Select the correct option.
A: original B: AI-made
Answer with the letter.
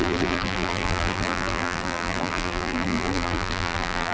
B